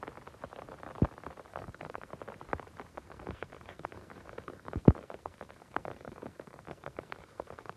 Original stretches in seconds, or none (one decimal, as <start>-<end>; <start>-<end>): 0.0-1.5; 2.1-2.9